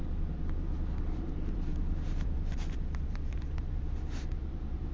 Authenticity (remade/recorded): remade